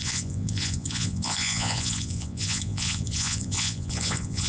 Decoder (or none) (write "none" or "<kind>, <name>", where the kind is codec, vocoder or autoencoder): vocoder, Vocos